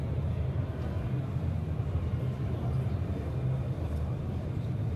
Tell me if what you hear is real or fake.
real